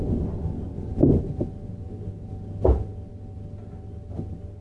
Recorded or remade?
recorded